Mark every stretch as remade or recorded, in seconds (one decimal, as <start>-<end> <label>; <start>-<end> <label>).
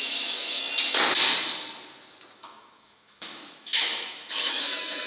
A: 0.0-0.6 remade; 0.6-2.4 recorded; 2.4-5.1 remade